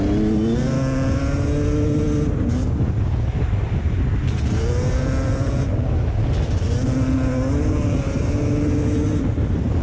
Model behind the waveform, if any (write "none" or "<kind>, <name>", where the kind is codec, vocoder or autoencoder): none